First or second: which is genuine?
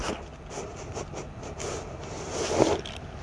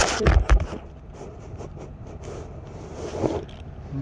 first